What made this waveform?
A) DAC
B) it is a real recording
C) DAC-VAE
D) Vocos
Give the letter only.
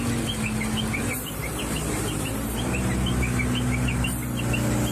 B